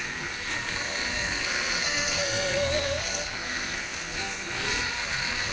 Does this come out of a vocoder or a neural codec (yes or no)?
yes